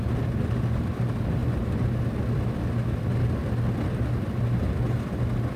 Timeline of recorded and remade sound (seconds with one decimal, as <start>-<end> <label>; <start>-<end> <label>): 0.0-5.6 recorded